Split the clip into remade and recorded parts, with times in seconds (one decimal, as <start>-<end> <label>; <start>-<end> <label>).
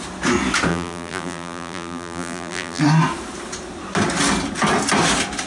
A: 0.0-0.7 recorded; 0.7-2.8 remade; 2.8-5.5 recorded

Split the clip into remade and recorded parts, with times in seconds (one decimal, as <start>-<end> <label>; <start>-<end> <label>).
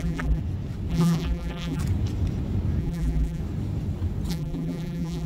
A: 0.0-0.4 remade; 0.4-0.9 recorded; 0.9-1.8 remade; 1.8-2.8 recorded; 2.8-3.4 remade; 3.4-4.3 recorded; 4.3-5.3 remade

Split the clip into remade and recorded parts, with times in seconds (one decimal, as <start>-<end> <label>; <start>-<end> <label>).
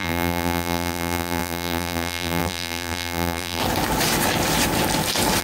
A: 0.0-3.6 remade; 3.6-5.4 recorded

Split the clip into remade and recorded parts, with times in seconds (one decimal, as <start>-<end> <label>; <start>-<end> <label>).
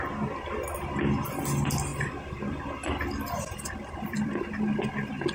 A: 0.0-1.9 recorded; 1.9-4.5 remade; 4.5-5.3 recorded